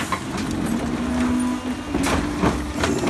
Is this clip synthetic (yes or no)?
no